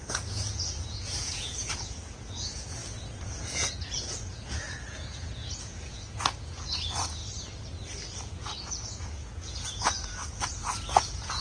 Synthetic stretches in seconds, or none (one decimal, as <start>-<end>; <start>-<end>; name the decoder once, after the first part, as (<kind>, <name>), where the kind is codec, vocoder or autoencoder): 0.0-2.8 (vocoder, Vocos); 3.3-7.2; 8.3-11.4